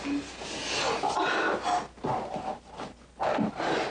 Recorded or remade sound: recorded